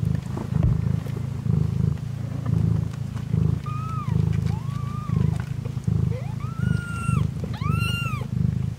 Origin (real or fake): real